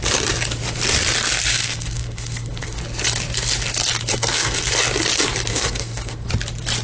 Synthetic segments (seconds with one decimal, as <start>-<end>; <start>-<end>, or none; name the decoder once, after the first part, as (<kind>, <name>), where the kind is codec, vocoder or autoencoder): 1.5-2.8 (codec, SNAC); 4.1-4.7; 5.5-6.3